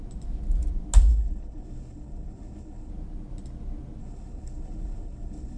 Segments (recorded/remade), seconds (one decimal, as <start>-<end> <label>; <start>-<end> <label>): 0.0-1.1 recorded; 1.1-2.9 remade; 2.9-4.0 recorded; 4.0-5.6 remade